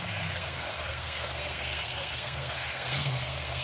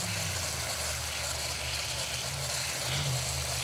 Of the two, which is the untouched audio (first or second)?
second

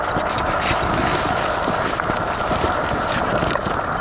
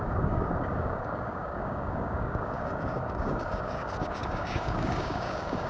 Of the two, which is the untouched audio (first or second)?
first